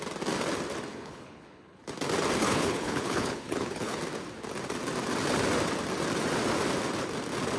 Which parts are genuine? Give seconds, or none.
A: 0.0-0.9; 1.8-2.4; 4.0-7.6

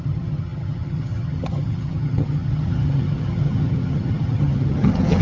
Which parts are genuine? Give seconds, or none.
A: none

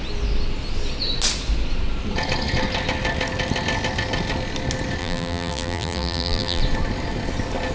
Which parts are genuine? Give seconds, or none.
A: 0.0-5.0; 6.6-7.7

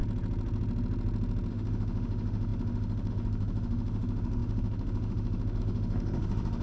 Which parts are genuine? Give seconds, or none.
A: 0.0-1.5

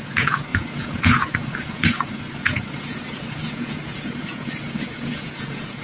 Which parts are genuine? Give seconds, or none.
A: none

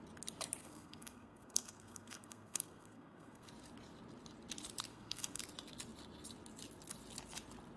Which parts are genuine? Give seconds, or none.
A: 0.0-0.6; 3.5-4.9; 5.4-7.8

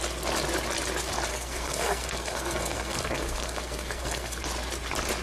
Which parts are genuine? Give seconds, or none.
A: 0.0-1.3; 4.4-5.2

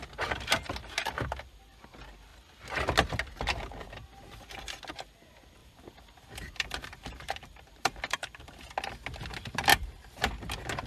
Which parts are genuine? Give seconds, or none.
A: 0.0-5.6; 8.7-9.7; 10.3-10.9